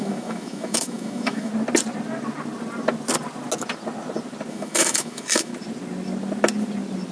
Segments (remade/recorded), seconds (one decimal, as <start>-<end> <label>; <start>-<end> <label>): 0.0-1.5 remade; 1.5-4.5 recorded; 4.5-5.5 remade; 5.5-7.1 recorded